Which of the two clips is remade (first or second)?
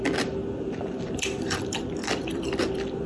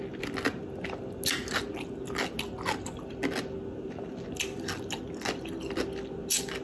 first